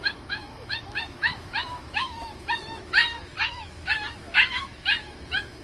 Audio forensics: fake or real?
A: fake